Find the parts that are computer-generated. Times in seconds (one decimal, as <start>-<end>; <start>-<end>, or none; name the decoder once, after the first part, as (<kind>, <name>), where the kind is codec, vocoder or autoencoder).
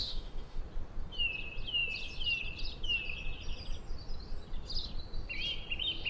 0.0-0.6 (autoencoder, DAC-VAE)